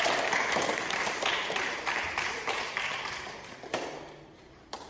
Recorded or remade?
remade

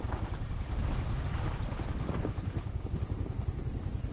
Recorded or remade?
recorded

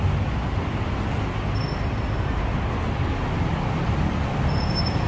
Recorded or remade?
recorded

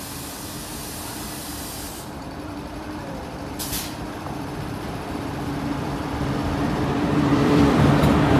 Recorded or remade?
remade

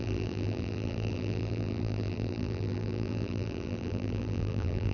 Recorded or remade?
remade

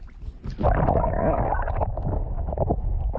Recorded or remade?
recorded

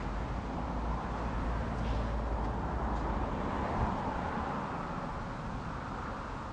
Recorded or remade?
recorded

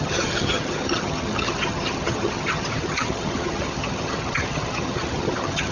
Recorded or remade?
remade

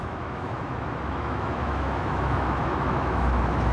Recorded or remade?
remade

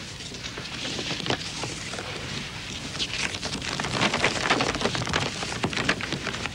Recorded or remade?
recorded